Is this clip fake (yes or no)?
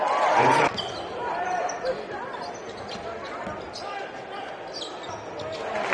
no